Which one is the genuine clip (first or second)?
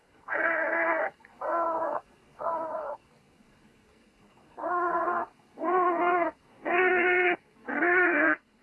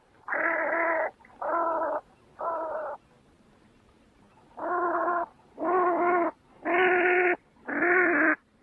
second